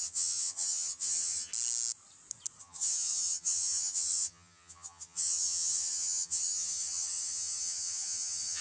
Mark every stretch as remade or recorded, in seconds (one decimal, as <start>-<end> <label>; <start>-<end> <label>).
0.0-1.5 remade; 1.5-2.6 recorded; 2.6-8.6 remade